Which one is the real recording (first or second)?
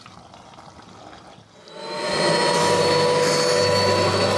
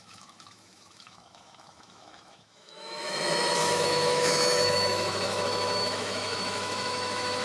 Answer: first